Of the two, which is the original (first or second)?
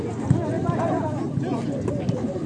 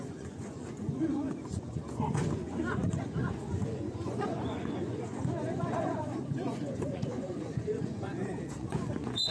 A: first